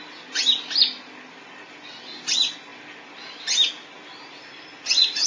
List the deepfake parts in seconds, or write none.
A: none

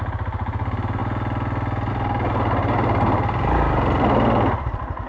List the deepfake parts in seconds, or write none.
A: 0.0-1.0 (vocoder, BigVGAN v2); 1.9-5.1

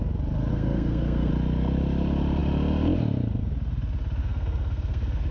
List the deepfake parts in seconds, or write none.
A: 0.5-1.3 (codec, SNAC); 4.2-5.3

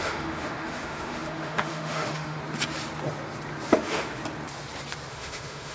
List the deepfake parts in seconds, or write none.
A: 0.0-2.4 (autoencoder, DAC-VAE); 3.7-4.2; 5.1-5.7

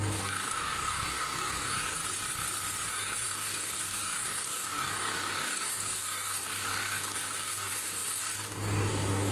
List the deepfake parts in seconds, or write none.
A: 0.0-2.0 (codec, DAC); 2.9-9.3

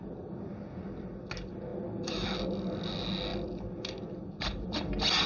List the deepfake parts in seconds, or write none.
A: none

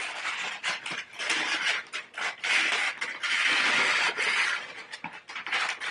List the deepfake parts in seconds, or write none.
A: none